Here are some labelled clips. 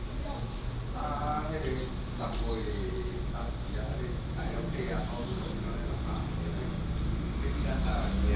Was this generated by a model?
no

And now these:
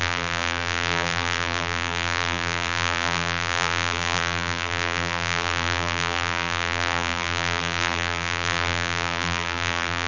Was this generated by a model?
yes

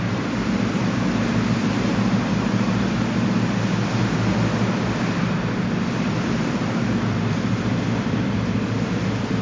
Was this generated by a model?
yes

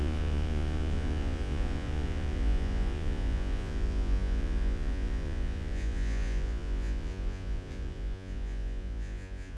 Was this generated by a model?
yes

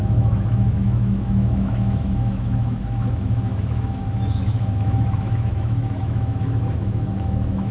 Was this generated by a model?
yes